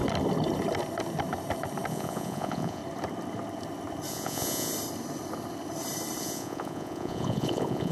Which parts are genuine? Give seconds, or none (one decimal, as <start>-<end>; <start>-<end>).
0.0-1.9; 2.8-4.1; 4.7-6.2